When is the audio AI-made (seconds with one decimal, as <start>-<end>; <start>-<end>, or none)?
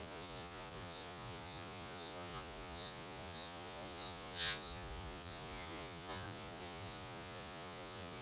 0.0-8.2